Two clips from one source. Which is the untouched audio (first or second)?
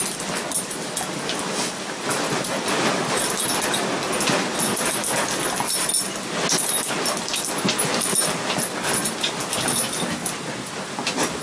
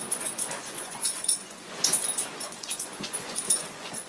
first